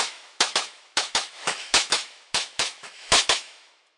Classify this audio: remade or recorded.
remade